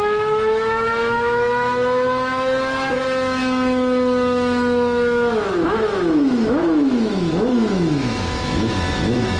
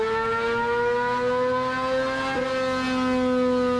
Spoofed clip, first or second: first